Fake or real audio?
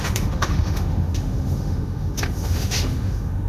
fake